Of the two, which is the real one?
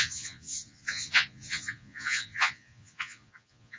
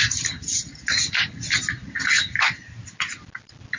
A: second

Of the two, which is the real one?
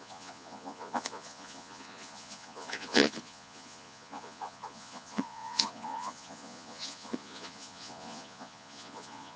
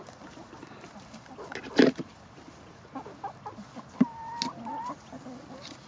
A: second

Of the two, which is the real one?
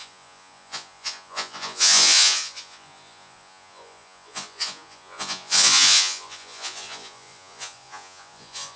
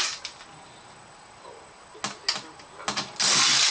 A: second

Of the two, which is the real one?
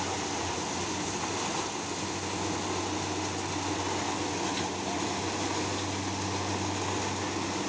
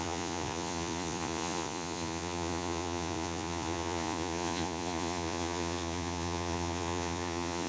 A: first